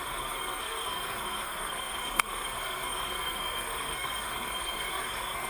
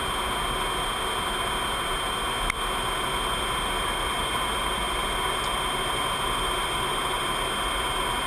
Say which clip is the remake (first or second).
first